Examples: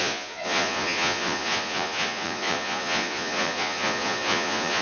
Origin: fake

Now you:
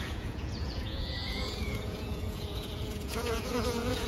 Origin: fake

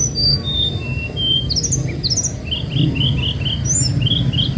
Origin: real